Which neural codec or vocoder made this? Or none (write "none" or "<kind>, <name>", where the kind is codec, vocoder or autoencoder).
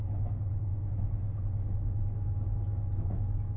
autoencoder, DAC-VAE